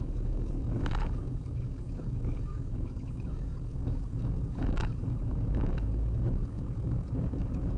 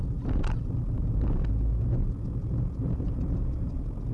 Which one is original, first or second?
second